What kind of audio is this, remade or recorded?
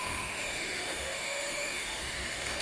remade